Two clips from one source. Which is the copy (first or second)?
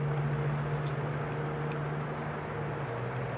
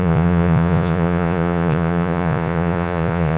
second